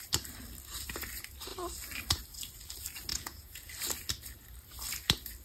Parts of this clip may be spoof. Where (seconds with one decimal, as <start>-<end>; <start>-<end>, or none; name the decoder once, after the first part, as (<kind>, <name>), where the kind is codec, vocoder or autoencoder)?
3.1-3.7 (vocoder, Vocos)